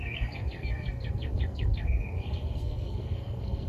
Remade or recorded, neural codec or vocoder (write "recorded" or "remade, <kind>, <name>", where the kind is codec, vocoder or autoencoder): remade, codec, SNAC